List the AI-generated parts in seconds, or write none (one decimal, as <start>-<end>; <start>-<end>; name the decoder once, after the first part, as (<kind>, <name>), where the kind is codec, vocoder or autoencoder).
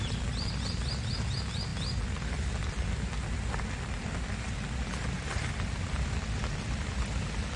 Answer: none